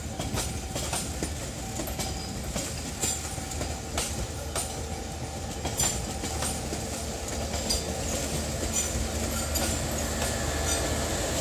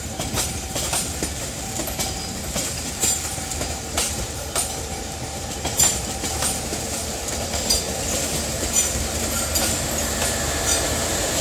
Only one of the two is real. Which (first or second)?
first